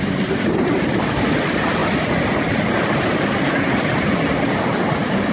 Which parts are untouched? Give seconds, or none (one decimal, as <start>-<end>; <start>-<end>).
0.0-5.3